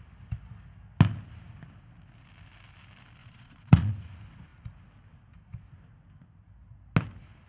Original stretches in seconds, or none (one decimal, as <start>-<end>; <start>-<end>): 0.0-3.2; 3.9-7.5